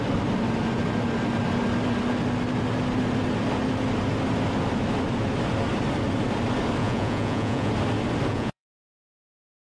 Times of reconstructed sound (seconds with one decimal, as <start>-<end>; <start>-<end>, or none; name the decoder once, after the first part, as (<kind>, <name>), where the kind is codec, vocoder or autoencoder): 6.8-7.7 (vocoder, Vocos); 8.3-9.7